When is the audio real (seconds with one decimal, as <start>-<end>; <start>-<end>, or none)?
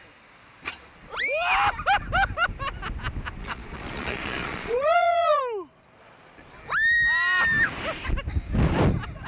0.0-3.4; 5.4-9.3